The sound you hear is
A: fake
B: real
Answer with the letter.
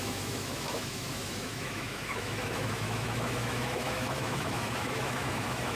A